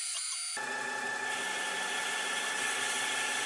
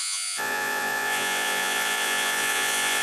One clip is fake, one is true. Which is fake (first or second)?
second